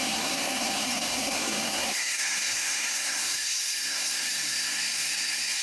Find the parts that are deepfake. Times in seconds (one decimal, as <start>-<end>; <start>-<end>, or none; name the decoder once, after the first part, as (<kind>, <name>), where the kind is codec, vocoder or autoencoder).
0.0-5.6 (codec, SNAC)